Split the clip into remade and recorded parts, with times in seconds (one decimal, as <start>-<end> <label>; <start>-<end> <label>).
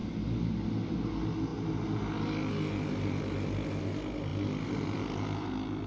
0.0-5.9 recorded